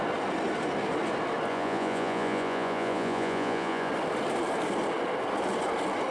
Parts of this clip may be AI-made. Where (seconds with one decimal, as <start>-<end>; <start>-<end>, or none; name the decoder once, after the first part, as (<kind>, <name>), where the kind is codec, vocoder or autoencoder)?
1.5-3.9 (vocoder, Vocos)